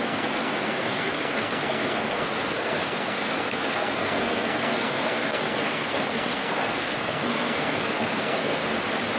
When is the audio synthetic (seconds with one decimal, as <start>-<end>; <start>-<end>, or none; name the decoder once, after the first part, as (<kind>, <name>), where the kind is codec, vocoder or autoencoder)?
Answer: 0.0-8.6 (codec, SNAC)